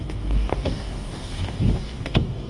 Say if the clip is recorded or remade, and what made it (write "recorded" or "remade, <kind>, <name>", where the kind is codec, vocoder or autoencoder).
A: remade, codec, DAC